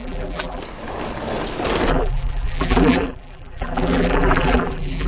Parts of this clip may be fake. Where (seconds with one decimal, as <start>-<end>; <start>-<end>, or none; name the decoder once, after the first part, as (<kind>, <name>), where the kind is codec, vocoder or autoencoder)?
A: 0.0-0.6 (vocoder, BigVGAN v2); 1.9-5.1